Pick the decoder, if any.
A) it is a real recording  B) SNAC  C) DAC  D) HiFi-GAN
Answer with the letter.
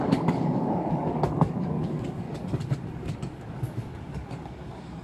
C